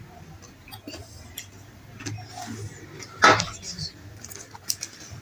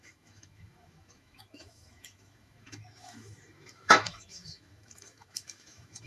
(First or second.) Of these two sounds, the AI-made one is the second